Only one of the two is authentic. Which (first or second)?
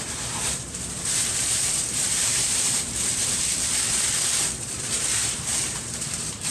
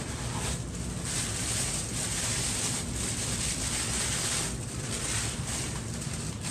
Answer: second